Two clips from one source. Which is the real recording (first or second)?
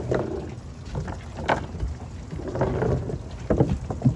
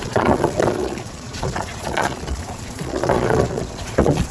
first